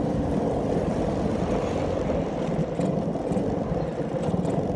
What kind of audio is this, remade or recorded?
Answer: recorded